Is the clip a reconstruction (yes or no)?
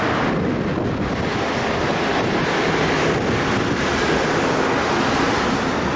no